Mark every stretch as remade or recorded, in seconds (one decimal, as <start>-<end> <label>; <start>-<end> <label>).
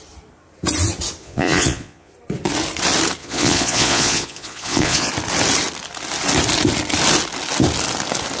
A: 0.0-1.2 recorded; 1.2-2.1 remade; 2.1-3.2 recorded; 3.2-5.1 remade; 5.1-8.4 recorded